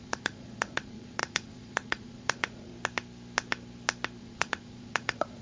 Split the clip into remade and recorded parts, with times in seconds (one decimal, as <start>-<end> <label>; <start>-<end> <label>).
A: 0.0-2.7 remade; 2.7-4.2 recorded; 4.2-5.4 remade